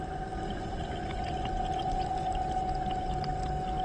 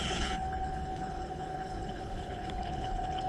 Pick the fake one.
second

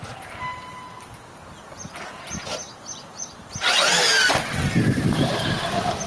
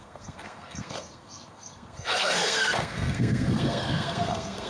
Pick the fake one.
second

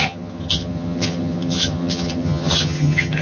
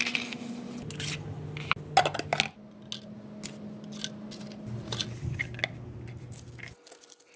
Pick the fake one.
first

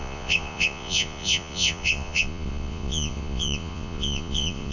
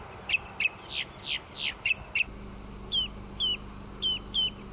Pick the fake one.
first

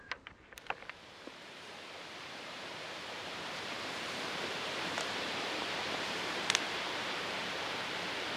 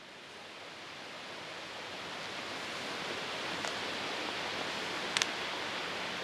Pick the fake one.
first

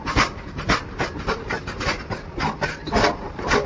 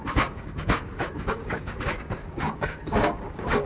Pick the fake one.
second